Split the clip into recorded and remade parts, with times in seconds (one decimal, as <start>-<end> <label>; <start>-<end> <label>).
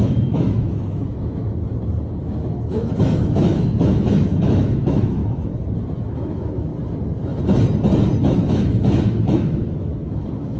0.0-1.4 remade; 1.4-2.2 recorded; 2.2-5.2 remade; 5.2-6.0 recorded; 6.0-6.7 remade; 6.7-8.2 recorded; 8.2-10.6 remade